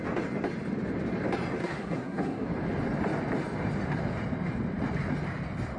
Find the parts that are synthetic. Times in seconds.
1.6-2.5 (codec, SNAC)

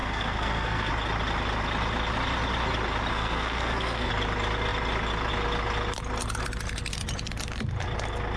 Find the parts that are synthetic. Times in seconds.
0.0-0.9 (codec, SNAC); 3.1-4.1

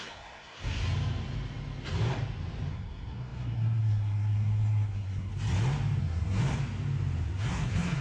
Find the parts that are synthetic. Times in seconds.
0.0-0.8 (codec, SNAC); 2.7-5.3; 6.0-6.4; 7.4-8.0

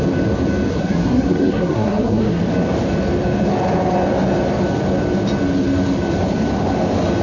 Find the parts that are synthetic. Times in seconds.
0.7-2.4 (codec, SNAC)